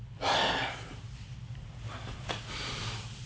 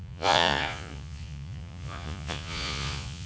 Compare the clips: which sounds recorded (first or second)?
first